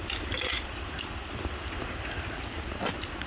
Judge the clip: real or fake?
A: real